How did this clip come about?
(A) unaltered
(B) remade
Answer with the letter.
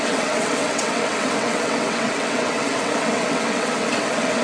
B